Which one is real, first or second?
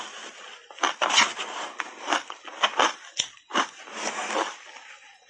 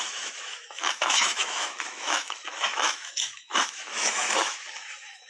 first